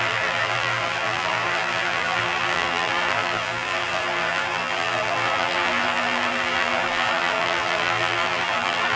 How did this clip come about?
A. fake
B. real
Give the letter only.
A